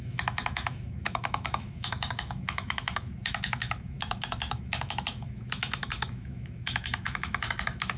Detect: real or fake fake